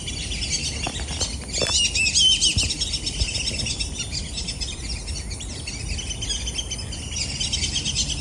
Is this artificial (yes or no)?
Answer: no